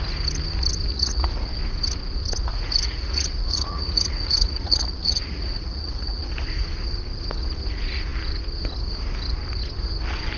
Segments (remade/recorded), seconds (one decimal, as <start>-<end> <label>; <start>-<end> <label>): 0.0-0.9 recorded; 0.9-1.5 remade; 1.5-2.5 recorded; 2.5-6.2 remade; 6.2-10.4 recorded